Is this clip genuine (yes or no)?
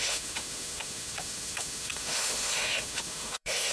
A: no